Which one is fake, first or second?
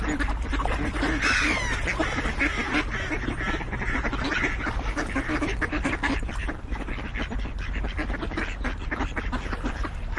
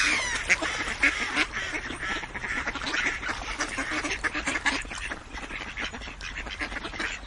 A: second